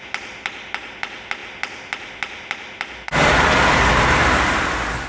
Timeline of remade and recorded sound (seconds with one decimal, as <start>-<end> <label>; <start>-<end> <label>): 0.0-5.1 recorded